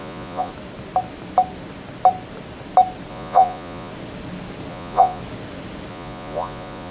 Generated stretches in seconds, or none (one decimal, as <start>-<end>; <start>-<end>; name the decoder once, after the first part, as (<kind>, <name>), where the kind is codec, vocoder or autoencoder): 0.0-0.5 (vocoder, Vocos); 3.1-3.9; 4.7-5.2; 5.9-6.9